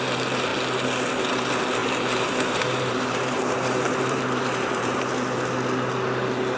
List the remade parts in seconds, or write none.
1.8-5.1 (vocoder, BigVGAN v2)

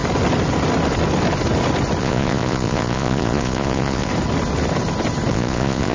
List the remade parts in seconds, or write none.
2.0-4.1 (vocoder, Vocos); 5.3-5.9

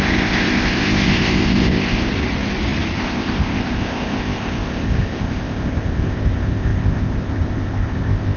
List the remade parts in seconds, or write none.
0.0-2.1 (codec, ZipCodec); 3.0-8.4

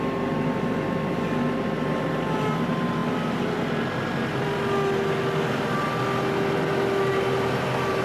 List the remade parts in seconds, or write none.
none

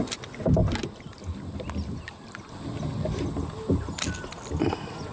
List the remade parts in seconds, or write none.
none

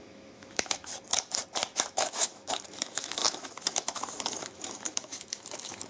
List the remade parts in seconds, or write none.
0.0-0.9 (autoencoder, DAC-VAE); 1.9-5.9

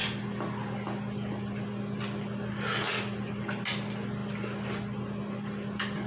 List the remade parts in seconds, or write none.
none